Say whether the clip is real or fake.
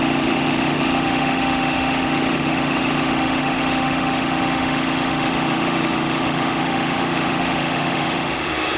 fake